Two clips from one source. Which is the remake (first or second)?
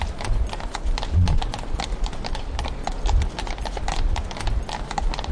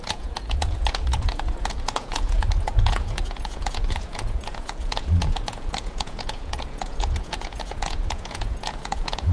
second